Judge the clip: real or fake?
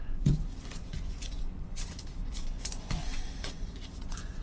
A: fake